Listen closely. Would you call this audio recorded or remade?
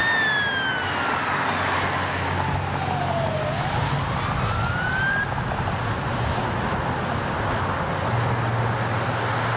recorded